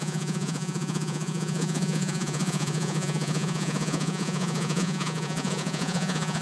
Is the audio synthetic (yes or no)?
yes